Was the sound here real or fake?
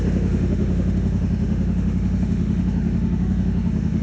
fake